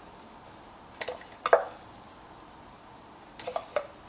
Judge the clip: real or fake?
real